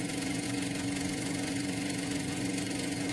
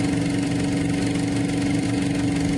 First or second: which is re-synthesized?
first